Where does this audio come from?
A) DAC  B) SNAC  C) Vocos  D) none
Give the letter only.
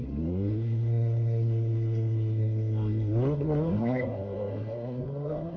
B